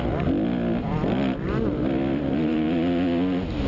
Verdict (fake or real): real